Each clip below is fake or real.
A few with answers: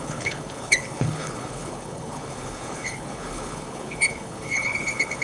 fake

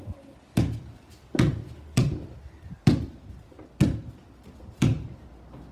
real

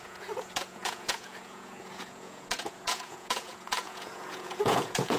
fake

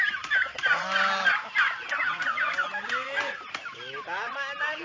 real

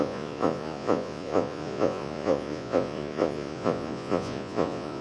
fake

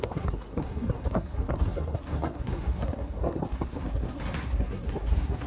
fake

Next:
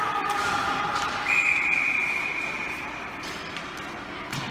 fake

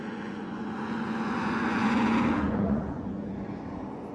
fake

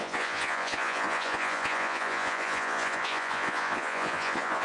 fake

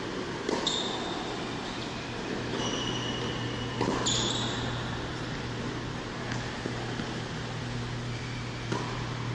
real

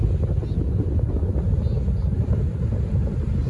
real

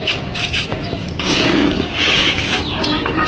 fake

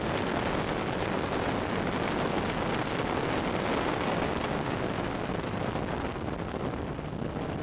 real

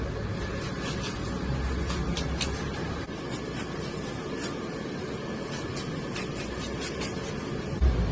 real